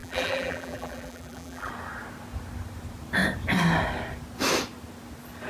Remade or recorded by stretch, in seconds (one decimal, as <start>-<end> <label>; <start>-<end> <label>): 0.0-1.7 remade; 1.7-5.5 recorded